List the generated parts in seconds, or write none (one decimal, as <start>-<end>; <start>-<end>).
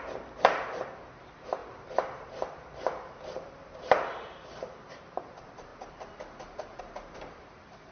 0.0-5.7; 6.8-7.9